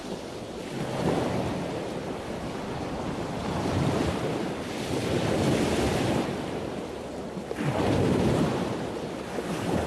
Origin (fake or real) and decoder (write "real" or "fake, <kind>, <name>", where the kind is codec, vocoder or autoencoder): real